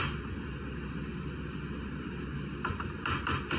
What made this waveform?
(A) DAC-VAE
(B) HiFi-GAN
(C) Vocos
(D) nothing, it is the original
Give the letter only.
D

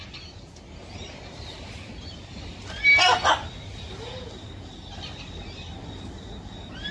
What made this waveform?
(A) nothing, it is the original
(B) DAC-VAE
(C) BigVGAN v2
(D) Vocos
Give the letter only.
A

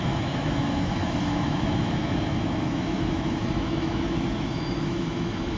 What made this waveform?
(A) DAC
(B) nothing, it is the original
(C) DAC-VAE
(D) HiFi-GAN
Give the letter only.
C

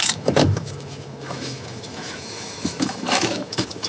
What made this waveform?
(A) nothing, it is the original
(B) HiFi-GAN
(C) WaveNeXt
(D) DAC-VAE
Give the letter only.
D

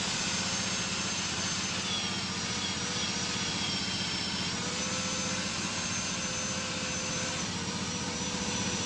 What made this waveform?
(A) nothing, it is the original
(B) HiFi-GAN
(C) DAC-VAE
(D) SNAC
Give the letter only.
A